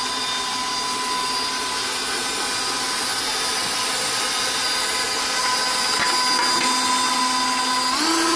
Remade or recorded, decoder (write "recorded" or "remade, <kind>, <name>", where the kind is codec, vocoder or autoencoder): recorded